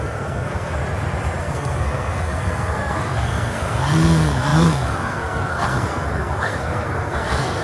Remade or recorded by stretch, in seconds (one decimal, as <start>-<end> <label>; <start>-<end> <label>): 0.0-0.8 remade; 0.8-1.4 recorded; 1.4-7.6 remade